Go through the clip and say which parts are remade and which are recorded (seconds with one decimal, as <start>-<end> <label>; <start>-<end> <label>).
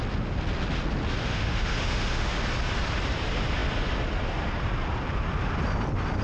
0.0-1.2 recorded; 1.2-2.4 remade; 2.4-6.2 recorded